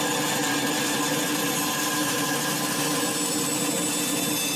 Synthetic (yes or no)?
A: no